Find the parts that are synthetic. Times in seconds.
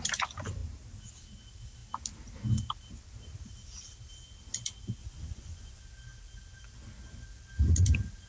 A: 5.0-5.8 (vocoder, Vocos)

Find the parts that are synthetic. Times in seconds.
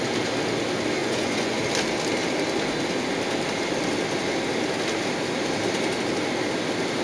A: 1.0-1.6 (vocoder, Vocos)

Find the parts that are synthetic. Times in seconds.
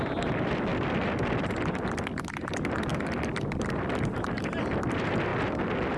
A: 0.0-0.7 (vocoder, BigVGAN v2); 2.5-5.3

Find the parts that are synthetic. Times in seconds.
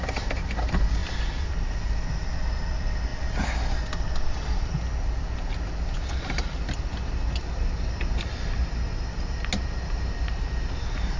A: none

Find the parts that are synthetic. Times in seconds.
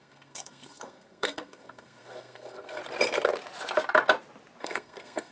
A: 0.0-2.8 (codec, SNAC); 4.6-5.3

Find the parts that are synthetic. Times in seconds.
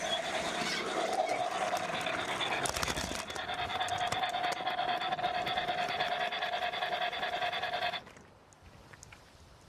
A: none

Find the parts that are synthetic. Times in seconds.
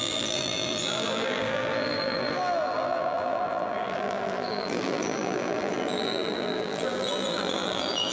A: 0.0-8.1 (vocoder, BigVGAN v2)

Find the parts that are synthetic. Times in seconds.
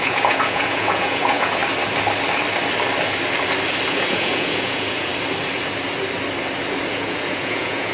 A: 0.0-1.6 (vocoder, Vocos); 3.9-5.1; 6.9-7.9